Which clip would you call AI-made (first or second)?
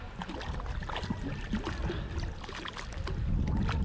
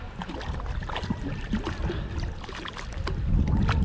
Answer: second